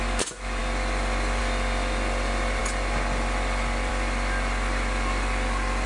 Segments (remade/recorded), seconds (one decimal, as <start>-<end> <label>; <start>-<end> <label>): 0.0-5.9 recorded